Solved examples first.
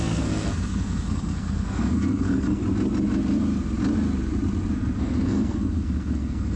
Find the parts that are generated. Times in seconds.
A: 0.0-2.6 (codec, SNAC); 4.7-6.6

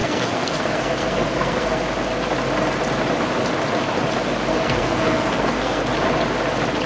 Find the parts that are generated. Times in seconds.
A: 0.0-1.8 (codec, SNAC); 4.5-5.8

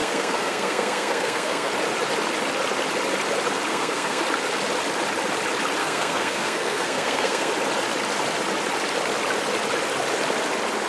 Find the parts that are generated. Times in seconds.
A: 0.0-1.7 (codec, SNAC); 3.7-4.2; 5.8-7.5

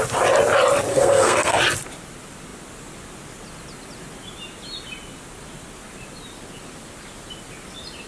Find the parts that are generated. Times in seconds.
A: 0.9-1.6 (codec, SNAC)